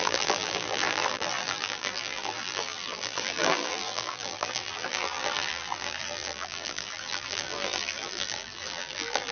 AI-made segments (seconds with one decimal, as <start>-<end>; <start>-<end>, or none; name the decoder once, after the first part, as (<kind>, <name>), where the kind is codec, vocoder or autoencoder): 0.0-9.3 (vocoder, BigVGAN v2)

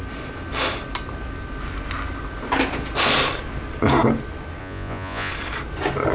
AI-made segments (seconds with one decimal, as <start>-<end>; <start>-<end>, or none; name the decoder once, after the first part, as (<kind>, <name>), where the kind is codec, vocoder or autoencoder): 4.6-5.3 (vocoder, Vocos)

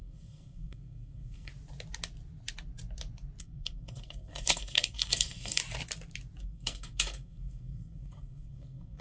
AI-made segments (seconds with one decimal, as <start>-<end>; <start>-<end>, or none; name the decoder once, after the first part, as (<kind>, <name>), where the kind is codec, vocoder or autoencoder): 0.0-1.5 (codec, SNAC); 3.4-5.6; 6.4-9.0